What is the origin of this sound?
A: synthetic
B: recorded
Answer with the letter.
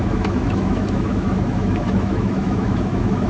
A